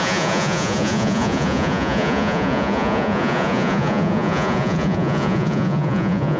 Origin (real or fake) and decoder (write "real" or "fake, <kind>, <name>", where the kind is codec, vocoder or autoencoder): fake, vocoder, Vocos